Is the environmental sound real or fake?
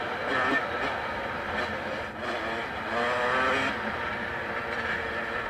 real